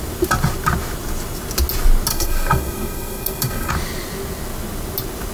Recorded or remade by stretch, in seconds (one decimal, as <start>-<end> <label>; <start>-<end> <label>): 0.0-2.1 recorded; 2.1-3.7 remade; 3.7-5.3 recorded